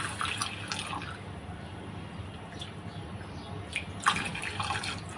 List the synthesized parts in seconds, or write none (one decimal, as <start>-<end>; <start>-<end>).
none